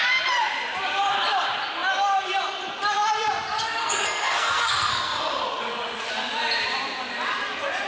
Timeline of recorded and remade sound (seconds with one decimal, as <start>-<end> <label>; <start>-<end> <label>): 0.0-3.8 recorded; 3.8-5.6 remade; 5.6-7.9 recorded